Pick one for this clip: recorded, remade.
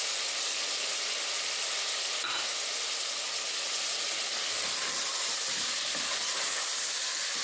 recorded